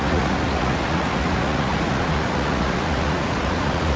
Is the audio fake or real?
fake